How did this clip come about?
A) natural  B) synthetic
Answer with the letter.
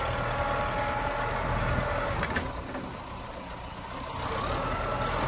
A